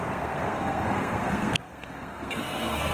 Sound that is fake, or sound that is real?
fake